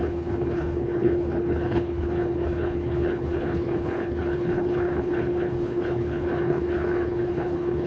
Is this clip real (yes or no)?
no